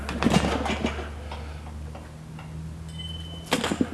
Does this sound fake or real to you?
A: real